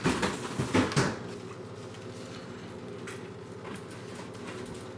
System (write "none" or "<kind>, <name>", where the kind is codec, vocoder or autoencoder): none